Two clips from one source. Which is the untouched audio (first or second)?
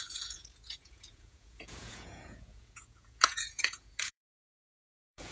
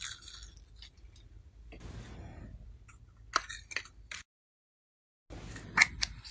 second